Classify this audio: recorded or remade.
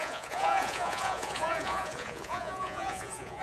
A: remade